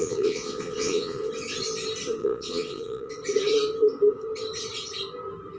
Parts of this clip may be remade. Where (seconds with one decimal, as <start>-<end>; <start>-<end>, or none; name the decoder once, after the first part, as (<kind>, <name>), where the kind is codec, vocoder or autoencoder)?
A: 0.0-1.3 (vocoder, Vocos); 2.2-3.1